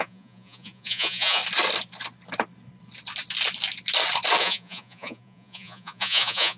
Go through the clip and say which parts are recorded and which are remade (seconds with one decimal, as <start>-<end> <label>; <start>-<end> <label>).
0.0-1.4 remade; 1.4-4.4 recorded; 4.4-6.6 remade